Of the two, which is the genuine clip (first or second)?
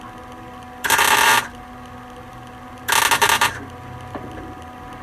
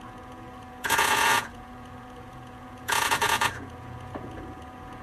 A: first